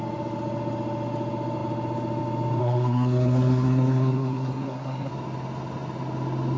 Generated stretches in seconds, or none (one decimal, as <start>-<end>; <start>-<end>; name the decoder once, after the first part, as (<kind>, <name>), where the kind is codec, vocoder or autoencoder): 2.6-5.1 (codec, SNAC)